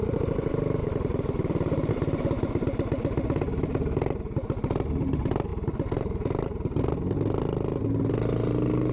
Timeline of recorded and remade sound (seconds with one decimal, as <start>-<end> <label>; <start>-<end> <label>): 0.0-0.8 recorded; 0.8-1.9 remade; 1.9-5.5 recorded; 5.5-6.8 remade; 6.8-8.9 recorded